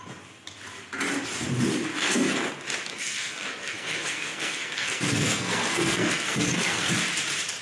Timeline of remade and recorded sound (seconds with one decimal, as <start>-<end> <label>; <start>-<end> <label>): 0.0-1.9 recorded; 1.9-2.5 remade; 2.5-2.9 recorded; 2.9-6.9 remade; 6.9-7.6 recorded